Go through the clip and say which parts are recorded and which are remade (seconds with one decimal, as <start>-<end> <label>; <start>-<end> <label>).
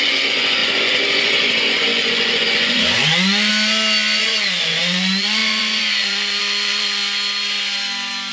0.0-3.5 remade; 3.5-4.2 recorded; 4.2-7.0 remade; 7.0-8.3 recorded